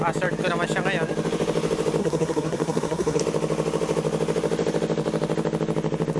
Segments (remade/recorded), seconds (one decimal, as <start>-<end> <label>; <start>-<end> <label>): 0.0-2.0 recorded; 2.0-3.2 remade; 3.2-6.2 recorded